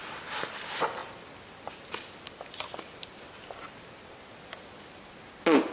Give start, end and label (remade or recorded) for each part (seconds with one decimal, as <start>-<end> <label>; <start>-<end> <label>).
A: 0.0-5.7 recorded